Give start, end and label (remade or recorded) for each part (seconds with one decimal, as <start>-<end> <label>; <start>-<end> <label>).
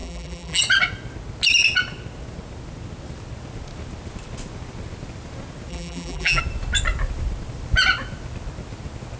0.0-0.6 remade; 0.6-5.7 recorded; 5.7-6.4 remade; 6.4-9.2 recorded